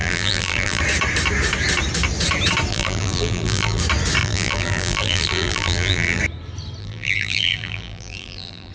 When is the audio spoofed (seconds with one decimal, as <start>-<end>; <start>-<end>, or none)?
0.0-0.8; 2.7-3.8; 4.2-6.2; 6.8-8.7